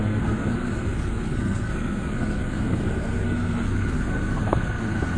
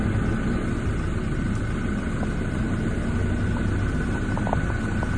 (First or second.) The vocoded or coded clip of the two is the first